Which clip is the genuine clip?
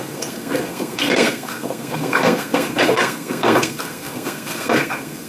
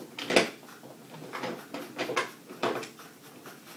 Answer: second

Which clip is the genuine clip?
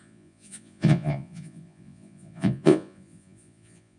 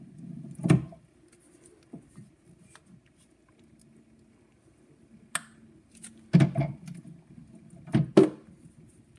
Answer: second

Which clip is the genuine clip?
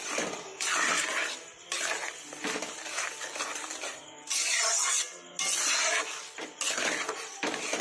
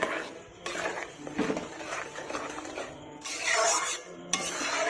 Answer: first